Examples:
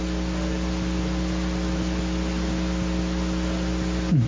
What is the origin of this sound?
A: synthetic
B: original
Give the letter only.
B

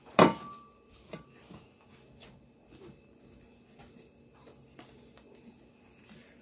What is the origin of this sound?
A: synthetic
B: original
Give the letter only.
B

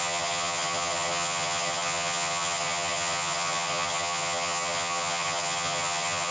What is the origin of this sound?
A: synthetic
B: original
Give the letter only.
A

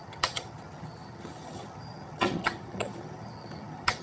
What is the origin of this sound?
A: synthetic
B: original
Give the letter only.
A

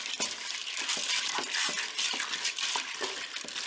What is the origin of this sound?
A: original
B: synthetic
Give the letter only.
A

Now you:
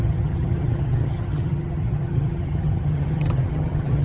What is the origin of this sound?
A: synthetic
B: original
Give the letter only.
A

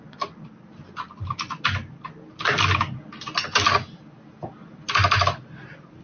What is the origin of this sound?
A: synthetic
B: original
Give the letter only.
B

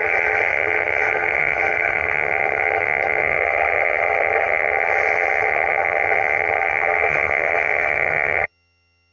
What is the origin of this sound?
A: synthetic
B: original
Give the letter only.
A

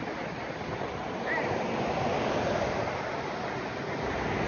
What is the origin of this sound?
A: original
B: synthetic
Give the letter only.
A